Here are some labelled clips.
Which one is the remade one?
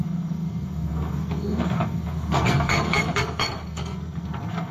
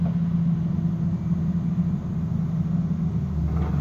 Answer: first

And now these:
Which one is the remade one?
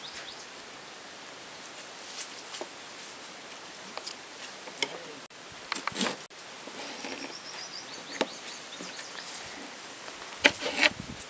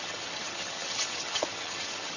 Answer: second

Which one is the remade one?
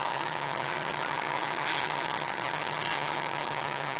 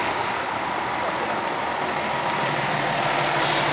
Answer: first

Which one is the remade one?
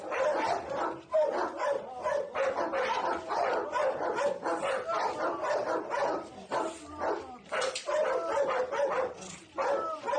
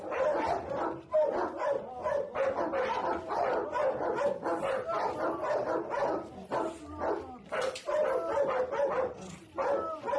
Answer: first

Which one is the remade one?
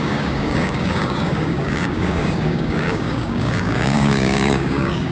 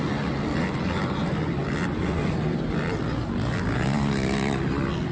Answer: first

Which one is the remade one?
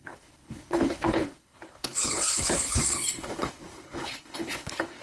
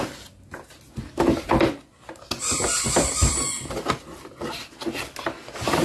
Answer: first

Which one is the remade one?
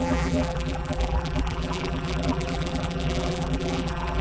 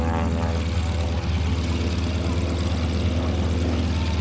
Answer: first